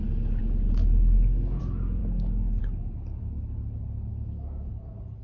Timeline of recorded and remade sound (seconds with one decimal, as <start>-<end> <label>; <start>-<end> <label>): 0.0-4.1 recorded; 4.1-4.7 remade; 4.7-5.2 recorded

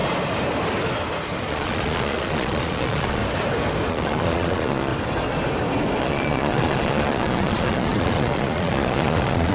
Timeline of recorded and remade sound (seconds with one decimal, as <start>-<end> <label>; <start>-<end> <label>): 0.0-1.5 recorded; 1.5-3.2 remade; 3.2-3.9 recorded; 3.9-4.9 remade; 4.9-6.0 recorded; 6.0-9.5 remade

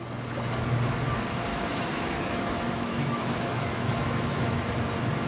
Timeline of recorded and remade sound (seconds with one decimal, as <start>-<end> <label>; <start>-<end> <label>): 0.0-1.5 recorded; 1.5-4.7 remade; 4.7-5.3 recorded

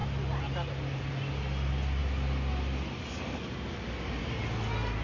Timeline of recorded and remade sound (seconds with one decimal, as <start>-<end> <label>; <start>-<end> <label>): 0.0-5.0 recorded

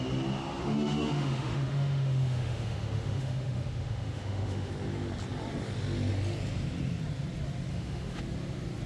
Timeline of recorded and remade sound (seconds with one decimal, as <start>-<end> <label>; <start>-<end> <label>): 0.0-0.6 recorded; 0.6-4.7 remade; 4.7-7.7 recorded; 7.7-8.2 remade; 8.2-8.9 recorded

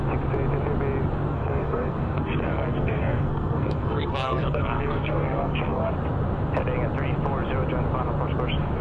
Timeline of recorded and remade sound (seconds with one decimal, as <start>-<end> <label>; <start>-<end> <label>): 0.0-1.3 recorded; 1.3-5.9 remade; 5.9-8.8 recorded

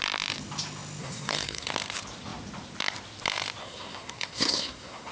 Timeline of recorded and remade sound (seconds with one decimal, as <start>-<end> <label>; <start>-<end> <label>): 0.0-1.0 recorded; 1.0-1.7 remade; 1.7-3.6 recorded; 3.6-5.1 remade